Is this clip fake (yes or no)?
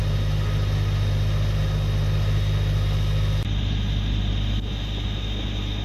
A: no